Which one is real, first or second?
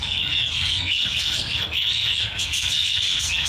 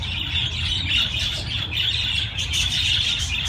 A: second